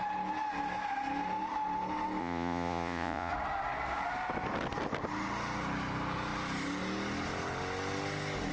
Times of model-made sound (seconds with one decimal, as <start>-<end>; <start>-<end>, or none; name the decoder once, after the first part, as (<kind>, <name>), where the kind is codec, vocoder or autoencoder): 2.2-3.3 (vocoder, Vocos)